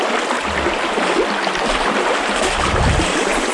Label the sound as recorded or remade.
recorded